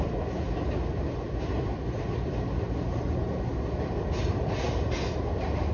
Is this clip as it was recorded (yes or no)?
yes